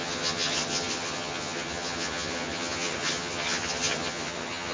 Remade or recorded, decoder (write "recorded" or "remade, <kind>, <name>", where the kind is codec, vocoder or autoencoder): remade, vocoder, HiFi-GAN